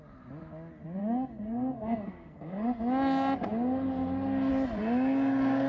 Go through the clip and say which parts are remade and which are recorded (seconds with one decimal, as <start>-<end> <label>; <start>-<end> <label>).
0.0-1.0 recorded; 1.0-2.8 remade; 2.8-5.7 recorded